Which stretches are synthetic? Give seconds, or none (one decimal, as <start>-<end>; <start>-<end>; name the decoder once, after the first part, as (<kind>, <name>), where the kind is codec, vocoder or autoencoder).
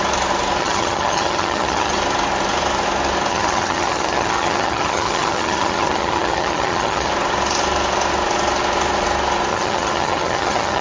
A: 0.6-1.9 (vocoder, HiFi-GAN); 3.3-7.1; 9.5-10.8